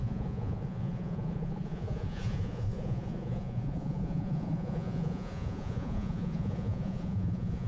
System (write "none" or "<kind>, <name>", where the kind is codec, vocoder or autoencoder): vocoder, Vocos